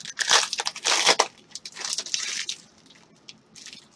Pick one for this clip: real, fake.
real